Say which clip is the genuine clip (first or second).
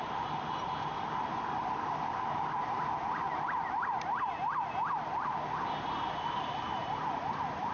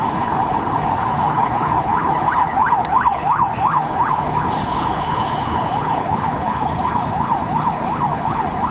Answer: first